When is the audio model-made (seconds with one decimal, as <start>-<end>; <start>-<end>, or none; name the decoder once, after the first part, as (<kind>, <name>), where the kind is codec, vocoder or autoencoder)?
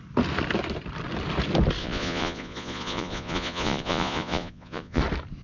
1.8-5.0 (vocoder, Vocos)